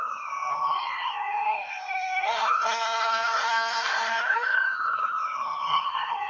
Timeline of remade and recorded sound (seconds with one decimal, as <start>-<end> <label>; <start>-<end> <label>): 0.0-6.3 remade